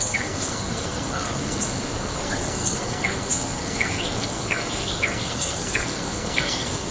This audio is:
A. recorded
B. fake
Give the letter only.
B